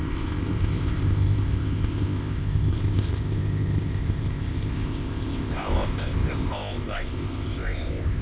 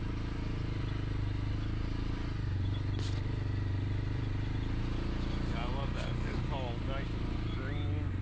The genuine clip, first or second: second